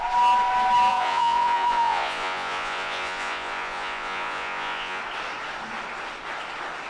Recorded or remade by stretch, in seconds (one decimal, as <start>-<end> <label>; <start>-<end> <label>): 0.0-0.9 recorded; 0.9-5.0 remade; 5.0-6.9 recorded